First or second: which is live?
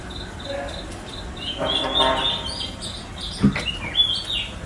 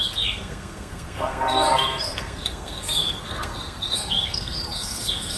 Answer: first